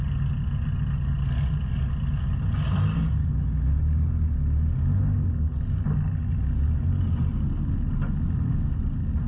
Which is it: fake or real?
real